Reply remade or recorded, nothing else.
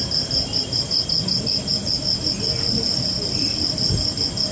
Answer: recorded